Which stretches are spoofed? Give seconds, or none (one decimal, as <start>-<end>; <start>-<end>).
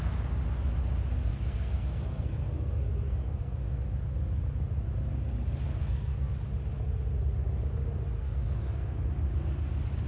1.3-3.8; 5.8-6.3; 8.2-9.0